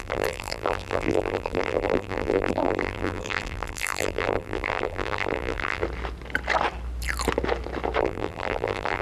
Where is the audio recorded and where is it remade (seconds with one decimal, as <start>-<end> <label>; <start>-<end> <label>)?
0.0-5.8 remade; 5.8-8.0 recorded; 8.0-9.0 remade